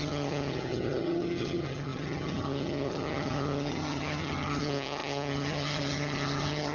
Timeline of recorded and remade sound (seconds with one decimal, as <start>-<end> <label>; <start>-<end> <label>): 0.0-6.7 remade